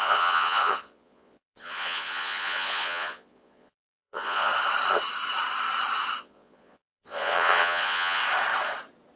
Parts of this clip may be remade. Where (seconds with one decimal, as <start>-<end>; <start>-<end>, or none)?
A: 0.0-4.5; 6.2-8.2